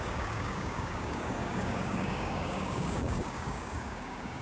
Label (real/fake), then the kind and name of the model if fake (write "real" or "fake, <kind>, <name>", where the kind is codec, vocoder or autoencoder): fake, codec, DAC